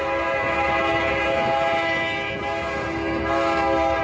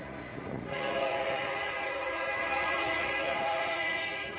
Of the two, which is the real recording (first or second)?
first